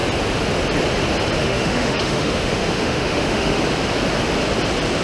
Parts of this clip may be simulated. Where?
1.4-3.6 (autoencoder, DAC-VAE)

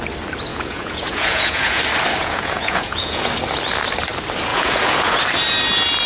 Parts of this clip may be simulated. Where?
0.5-1.8 (vocoder, Vocos); 2.2-3.3; 4.5-5.2

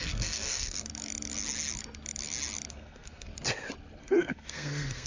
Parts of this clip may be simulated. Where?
0.0-0.9 (codec, SNAC); 2.7-3.3; 4.0-5.1

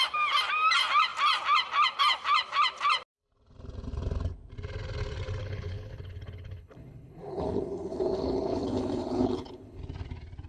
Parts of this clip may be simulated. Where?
5.4-9.8 (codec, HILCodec)